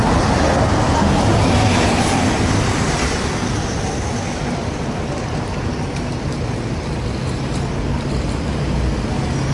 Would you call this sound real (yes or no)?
yes